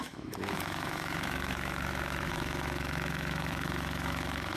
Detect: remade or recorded remade